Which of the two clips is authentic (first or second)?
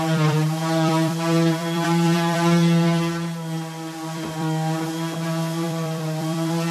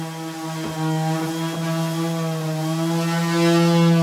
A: second